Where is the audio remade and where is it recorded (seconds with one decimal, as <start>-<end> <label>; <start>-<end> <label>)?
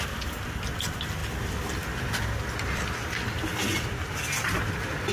0.0-5.1 recorded